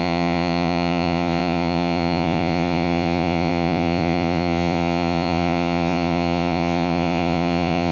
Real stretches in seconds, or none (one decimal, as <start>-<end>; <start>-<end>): none